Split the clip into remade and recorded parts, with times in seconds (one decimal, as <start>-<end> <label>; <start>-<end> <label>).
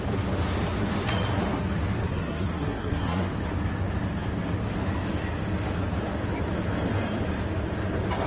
0.0-2.0 recorded; 2.0-3.3 remade; 3.3-8.3 recorded